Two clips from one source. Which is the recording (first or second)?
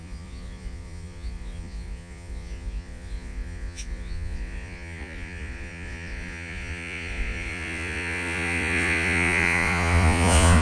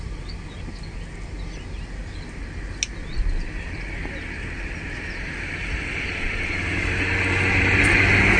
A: second